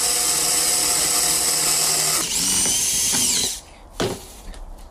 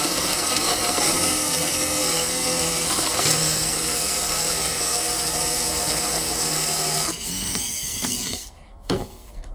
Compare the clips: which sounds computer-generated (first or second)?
second